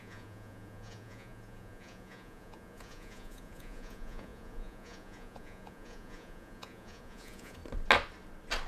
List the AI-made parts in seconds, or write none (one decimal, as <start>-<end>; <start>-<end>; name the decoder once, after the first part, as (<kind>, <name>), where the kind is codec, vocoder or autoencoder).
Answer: 0.0-7.6 (vocoder, Vocos)